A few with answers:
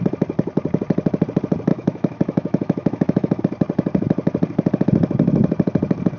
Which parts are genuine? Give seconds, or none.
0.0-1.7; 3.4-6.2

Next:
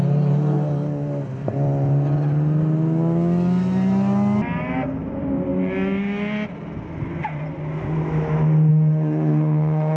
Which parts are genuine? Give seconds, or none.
0.0-8.7

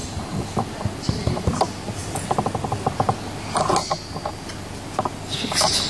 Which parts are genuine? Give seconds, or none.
0.0-5.9